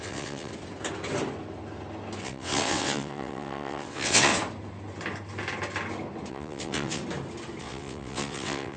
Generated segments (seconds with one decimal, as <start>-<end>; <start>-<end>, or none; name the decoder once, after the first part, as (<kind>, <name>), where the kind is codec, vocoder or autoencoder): 0.0-0.5 (vocoder, WaveNeXt); 2.2-4.3; 6.3-7.0; 7.6-8.8